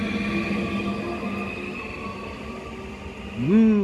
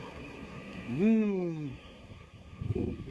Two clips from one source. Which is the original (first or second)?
first